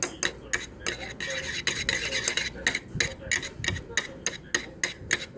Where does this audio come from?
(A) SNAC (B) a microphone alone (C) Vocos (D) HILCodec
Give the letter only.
B